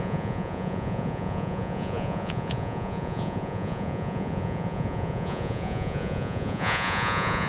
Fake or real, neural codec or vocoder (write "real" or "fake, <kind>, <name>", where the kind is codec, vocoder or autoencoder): fake, vocoder, Vocos